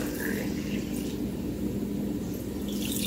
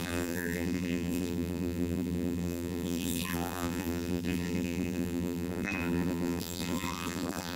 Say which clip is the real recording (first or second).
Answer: first